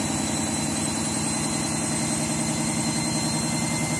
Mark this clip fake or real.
real